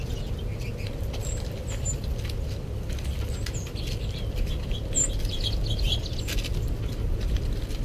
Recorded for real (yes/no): yes